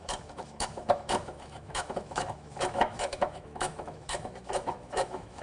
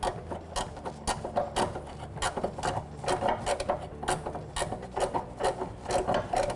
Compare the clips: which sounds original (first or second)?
second